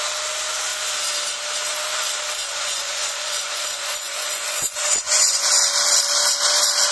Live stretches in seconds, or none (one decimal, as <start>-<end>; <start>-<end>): 0.0-2.4; 5.5-6.9